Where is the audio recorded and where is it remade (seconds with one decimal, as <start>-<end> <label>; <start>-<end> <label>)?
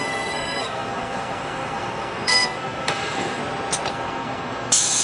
0.0-3.4 remade; 3.4-3.9 recorded; 3.9-5.0 remade